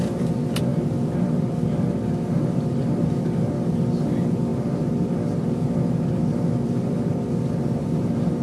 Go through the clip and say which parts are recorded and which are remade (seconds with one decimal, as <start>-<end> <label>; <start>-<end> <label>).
0.0-8.4 recorded